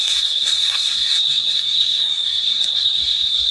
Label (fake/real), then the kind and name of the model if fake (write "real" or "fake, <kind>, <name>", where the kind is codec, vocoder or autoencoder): fake, codec, SNAC